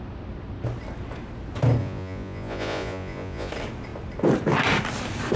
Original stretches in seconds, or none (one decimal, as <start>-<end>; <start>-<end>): 0.0-1.8; 3.5-5.4